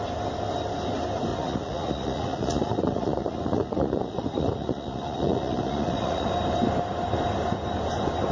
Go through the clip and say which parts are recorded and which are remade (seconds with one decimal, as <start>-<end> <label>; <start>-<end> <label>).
0.0-1.3 recorded; 1.3-6.3 remade; 6.3-8.3 recorded